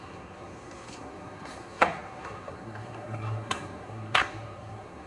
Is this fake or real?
fake